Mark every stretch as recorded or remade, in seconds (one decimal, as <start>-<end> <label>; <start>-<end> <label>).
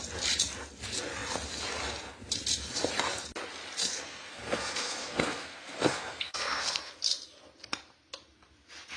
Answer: 0.0-3.8 recorded; 3.8-6.9 remade; 6.9-9.0 recorded